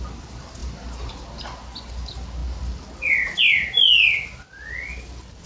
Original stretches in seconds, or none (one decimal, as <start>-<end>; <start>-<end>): 0.0-5.5